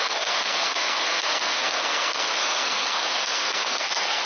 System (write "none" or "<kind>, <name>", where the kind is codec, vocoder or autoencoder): codec, SNAC